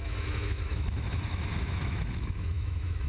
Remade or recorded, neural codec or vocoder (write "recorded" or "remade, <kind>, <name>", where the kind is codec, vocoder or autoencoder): remade, autoencoder, DAC-VAE